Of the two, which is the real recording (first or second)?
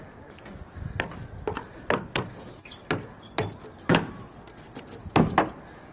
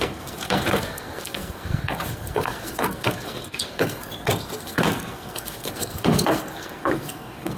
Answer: first